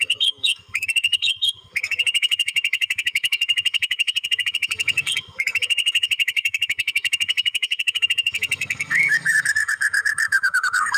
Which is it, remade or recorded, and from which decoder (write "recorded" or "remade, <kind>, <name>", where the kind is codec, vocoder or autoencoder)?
remade, codec, SNAC